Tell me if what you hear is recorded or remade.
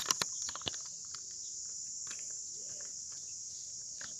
recorded